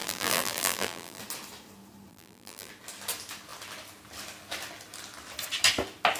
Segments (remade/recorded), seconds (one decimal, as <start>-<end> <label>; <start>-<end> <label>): 0.0-1.2 remade; 1.2-2.1 recorded; 2.1-2.7 remade; 2.7-6.2 recorded